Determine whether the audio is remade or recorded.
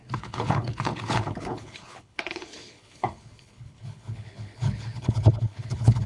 remade